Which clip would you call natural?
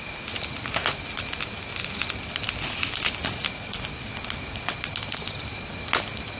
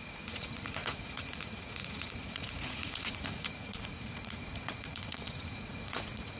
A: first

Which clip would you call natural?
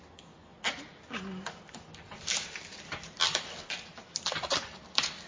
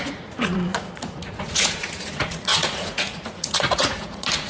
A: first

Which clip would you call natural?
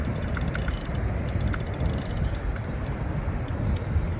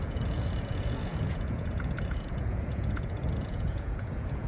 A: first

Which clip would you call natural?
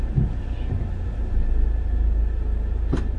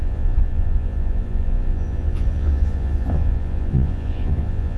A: first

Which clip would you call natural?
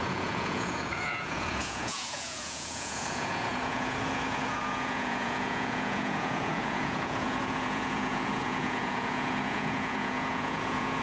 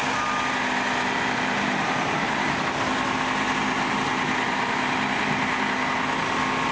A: second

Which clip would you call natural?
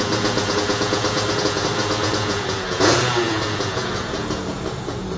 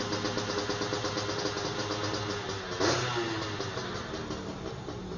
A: second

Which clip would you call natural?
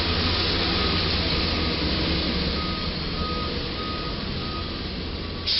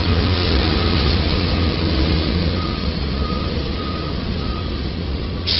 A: first